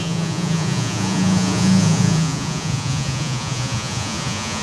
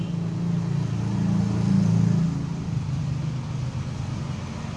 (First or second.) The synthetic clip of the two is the first